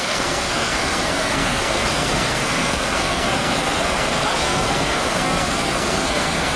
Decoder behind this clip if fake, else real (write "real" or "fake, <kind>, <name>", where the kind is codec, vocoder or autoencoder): fake, codec, SNAC